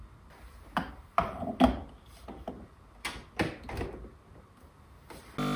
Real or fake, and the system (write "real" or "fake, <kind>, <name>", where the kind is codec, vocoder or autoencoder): real